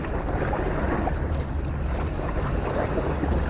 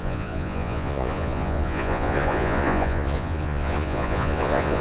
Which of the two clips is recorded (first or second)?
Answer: first